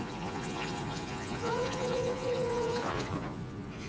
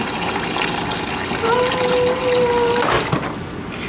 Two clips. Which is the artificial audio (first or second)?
first